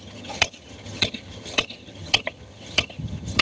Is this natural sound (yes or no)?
no